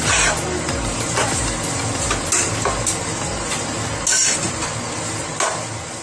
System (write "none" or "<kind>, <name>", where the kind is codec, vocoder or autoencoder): none